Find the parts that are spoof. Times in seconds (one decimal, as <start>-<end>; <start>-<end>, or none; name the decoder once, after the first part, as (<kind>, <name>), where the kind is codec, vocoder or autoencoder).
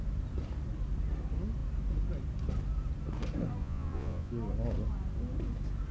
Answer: 3.6-4.3 (vocoder, Vocos)